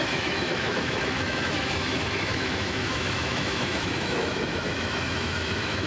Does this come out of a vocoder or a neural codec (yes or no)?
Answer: yes